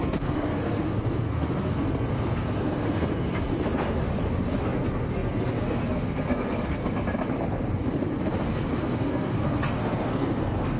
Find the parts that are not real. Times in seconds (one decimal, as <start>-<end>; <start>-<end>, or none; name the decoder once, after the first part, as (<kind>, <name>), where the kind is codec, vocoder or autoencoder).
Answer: 0.0-3.5 (codec, SNAC); 4.6-6.8; 8.8-10.8